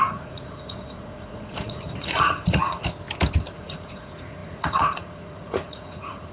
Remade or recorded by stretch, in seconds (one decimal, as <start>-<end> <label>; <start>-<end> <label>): 0.0-2.8 remade; 2.8-3.5 recorded; 3.5-6.3 remade